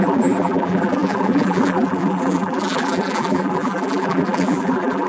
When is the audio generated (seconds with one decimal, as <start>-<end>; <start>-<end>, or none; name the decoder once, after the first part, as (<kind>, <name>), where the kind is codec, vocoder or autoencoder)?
0.0-5.1 (vocoder, BigVGAN v2)